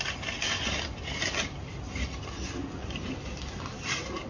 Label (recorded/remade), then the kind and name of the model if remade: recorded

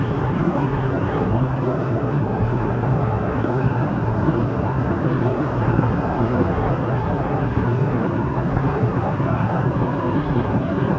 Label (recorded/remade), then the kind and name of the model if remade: remade, codec, SNAC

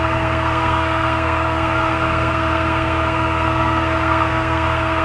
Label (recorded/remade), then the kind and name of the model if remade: remade, codec, SNAC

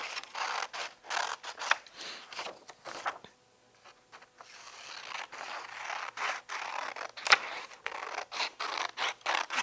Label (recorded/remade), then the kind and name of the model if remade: recorded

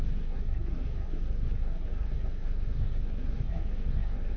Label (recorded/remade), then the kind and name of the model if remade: remade, codec, SNAC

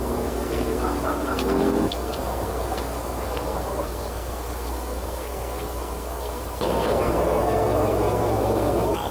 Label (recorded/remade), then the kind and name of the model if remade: remade, codec, SNAC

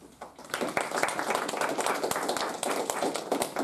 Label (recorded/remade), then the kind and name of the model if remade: recorded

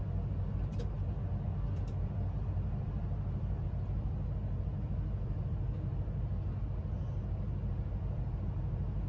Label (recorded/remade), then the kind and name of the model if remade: recorded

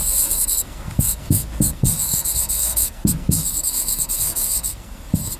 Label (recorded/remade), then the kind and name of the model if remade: remade, codec, SNAC